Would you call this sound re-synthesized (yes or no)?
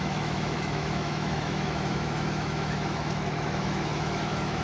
yes